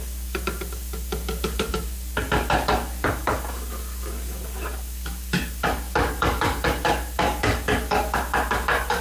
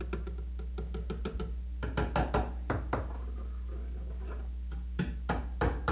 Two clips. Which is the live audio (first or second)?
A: second